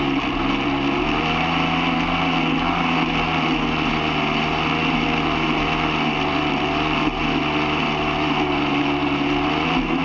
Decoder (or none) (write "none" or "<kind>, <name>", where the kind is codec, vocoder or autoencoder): none